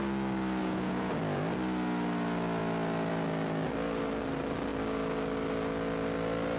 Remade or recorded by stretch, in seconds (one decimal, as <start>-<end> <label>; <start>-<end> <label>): 0.0-0.6 recorded; 0.6-1.1 remade; 1.1-6.6 recorded